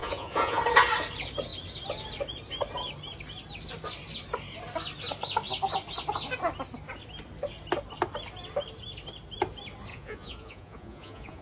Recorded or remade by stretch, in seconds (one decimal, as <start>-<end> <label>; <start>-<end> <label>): 0.0-0.6 remade; 0.6-9.9 recorded; 9.9-11.4 remade